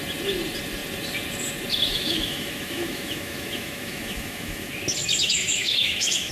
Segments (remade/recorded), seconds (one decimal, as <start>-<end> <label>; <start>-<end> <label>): 0.0-1.9 recorded; 1.9-4.7 remade; 4.7-5.2 recorded; 5.2-6.3 remade